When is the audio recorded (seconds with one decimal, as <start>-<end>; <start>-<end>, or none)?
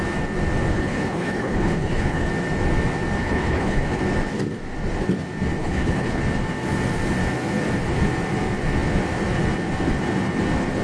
0.0-0.7; 2.3-3.2; 4.0-5.6; 6.2-10.8